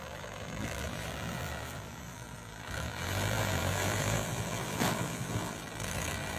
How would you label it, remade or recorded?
remade